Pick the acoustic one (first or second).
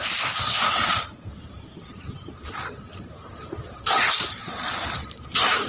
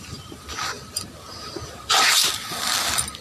second